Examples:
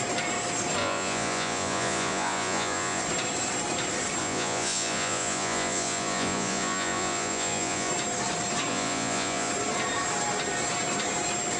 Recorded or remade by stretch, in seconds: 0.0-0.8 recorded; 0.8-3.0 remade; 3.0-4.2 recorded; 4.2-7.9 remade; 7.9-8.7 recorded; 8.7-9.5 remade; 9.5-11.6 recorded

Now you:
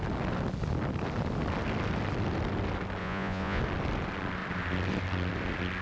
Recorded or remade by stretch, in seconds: 0.0-3.0 recorded; 3.0-3.6 remade; 3.6-5.8 recorded

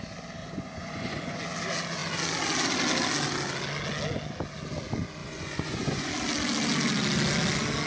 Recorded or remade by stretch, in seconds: 0.0-0.4 recorded; 0.4-1.4 remade; 1.4-5.2 recorded; 5.2-6.1 remade; 6.1-7.9 recorded

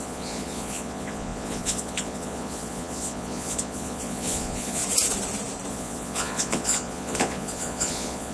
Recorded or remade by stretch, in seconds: 0.0-4.8 remade; 4.8-5.7 recorded; 5.7-8.3 remade

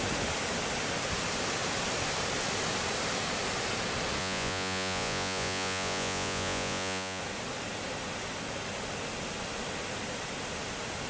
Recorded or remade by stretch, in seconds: 0.0-4.2 recorded; 4.2-7.2 remade; 7.2-11.1 recorded

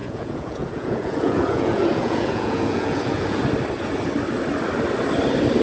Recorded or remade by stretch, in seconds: 0.0-3.4 remade; 3.4-5.6 recorded

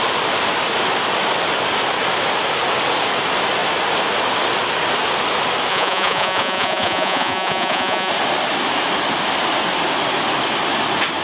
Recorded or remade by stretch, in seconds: 0.0-5.7 recorded; 5.7-8.1 remade; 8.1-11.2 recorded